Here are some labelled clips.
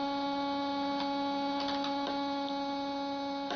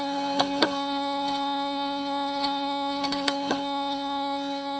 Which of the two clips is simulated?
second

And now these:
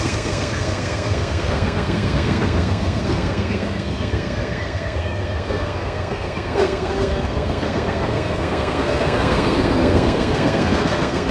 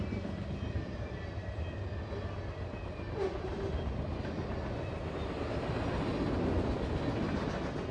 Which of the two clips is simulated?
first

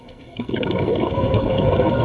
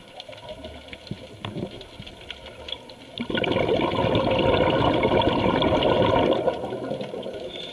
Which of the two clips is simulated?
first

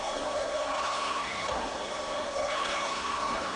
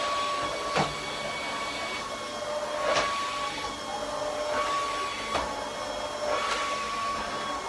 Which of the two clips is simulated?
first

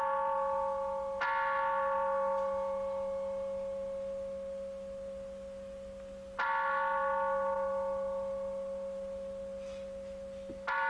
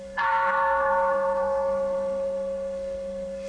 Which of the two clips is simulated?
second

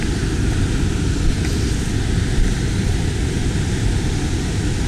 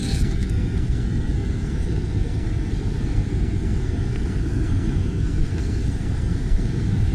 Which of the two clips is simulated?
second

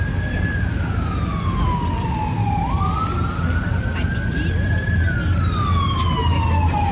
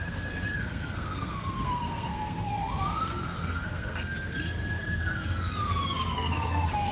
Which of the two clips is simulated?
second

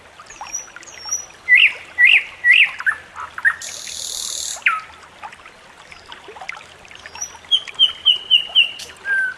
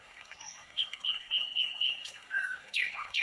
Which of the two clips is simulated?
second